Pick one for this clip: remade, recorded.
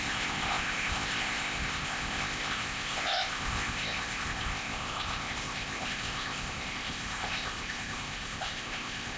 remade